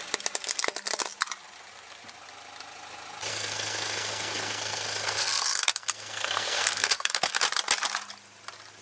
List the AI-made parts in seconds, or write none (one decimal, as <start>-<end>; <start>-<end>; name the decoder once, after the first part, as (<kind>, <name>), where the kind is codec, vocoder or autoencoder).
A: 3.3-7.3 (codec, SNAC)